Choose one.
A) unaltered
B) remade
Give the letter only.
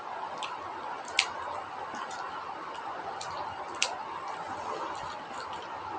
A